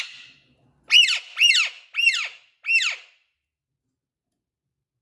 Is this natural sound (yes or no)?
yes